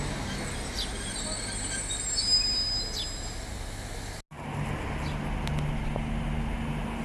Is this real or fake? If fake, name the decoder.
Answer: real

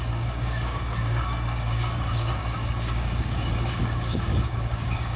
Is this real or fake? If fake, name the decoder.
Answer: fake, codec, DAC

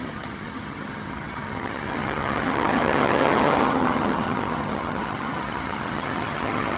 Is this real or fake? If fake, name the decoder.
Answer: fake, vocoder, HiFi-GAN